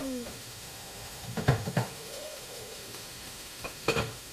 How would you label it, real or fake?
fake